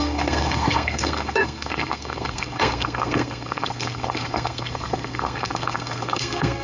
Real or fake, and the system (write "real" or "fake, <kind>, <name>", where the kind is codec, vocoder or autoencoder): fake, codec, SNAC